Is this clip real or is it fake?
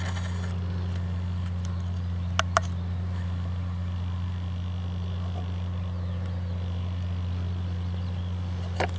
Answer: real